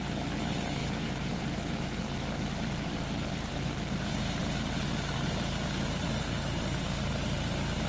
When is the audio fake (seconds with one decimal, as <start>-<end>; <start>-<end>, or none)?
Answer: 0.8-1.4